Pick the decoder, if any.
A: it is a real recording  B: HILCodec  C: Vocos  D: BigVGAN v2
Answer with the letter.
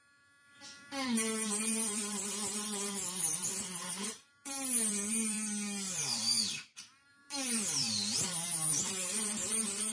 D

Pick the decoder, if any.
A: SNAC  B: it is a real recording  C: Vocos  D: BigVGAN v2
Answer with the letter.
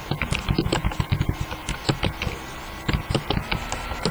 B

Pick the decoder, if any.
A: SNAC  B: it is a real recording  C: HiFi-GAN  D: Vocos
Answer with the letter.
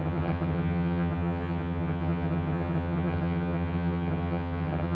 C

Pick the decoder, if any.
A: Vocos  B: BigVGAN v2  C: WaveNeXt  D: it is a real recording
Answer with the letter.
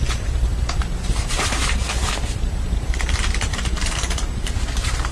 B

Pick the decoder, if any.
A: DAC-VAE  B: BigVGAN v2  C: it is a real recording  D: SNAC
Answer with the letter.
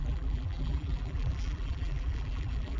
B